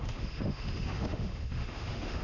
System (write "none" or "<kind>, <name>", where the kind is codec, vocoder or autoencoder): autoencoder, DAC-VAE